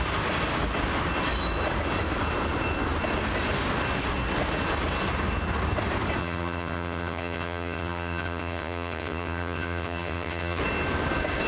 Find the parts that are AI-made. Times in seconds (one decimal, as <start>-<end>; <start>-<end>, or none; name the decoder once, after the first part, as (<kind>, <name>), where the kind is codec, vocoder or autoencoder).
6.2-10.6 (vocoder, HiFi-GAN)